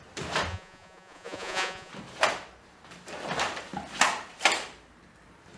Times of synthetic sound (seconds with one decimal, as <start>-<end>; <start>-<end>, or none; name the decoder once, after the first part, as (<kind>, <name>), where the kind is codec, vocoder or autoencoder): 0.5-1.9 (vocoder, Vocos)